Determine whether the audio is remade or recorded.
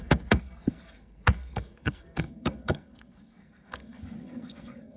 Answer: remade